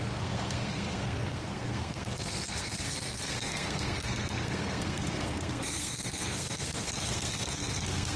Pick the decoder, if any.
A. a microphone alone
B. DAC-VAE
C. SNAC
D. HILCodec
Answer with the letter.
C